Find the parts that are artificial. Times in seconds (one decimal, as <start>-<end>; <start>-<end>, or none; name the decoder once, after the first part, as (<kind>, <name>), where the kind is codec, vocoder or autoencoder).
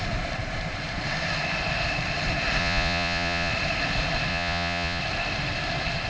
2.6-3.5 (vocoder, Vocos); 4.3-5.0